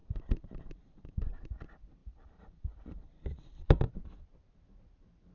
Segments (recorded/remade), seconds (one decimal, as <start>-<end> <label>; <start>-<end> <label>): 0.0-1.5 remade; 1.5-2.0 recorded; 2.0-3.9 remade; 3.9-5.3 recorded